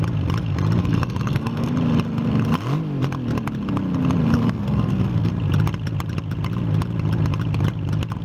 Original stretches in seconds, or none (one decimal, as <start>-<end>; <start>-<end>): 0.0-0.8; 1.7-4.3; 5.3-8.2